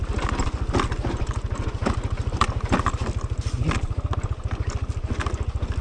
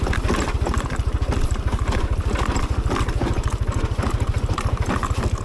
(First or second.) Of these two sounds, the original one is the first